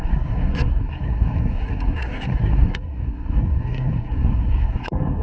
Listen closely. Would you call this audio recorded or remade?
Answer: remade